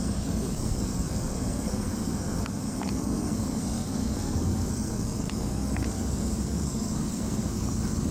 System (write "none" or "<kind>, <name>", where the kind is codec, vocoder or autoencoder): codec, SNAC